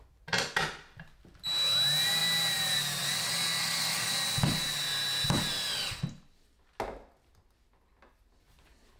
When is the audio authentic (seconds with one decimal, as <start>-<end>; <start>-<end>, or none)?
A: 0.0-3.6; 4.1-9.0